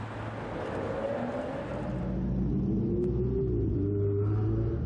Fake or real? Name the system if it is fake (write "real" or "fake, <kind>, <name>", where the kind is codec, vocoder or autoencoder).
real